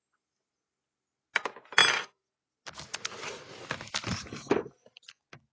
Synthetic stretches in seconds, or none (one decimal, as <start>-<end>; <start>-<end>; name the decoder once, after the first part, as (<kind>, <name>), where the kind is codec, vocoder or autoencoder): none